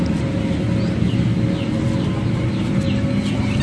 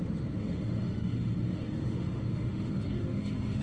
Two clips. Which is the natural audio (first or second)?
first